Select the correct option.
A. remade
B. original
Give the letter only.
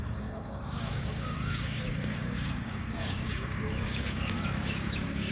A